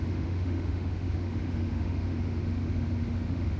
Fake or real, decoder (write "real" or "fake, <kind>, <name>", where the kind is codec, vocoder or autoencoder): fake, autoencoder, DAC-VAE